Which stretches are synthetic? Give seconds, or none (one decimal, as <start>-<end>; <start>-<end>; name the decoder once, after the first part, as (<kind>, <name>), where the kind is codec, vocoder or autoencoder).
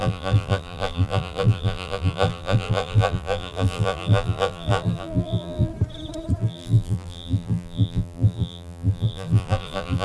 0.0-5.7 (vocoder, BigVGAN v2); 6.4-10.0